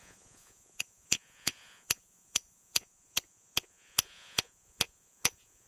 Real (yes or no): no